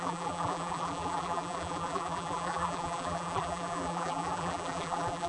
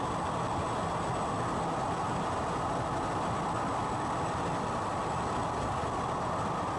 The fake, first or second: first